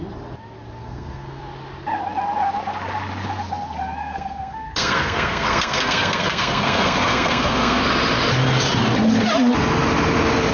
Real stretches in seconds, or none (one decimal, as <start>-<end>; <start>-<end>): 0.0-0.8; 1.4-4.0; 7.8-10.5